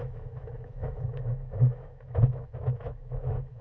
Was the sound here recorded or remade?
remade